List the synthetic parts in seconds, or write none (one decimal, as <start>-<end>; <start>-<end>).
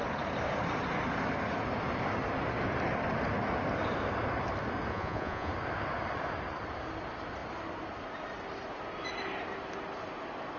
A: 4.9-5.5